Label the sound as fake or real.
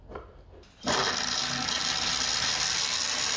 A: real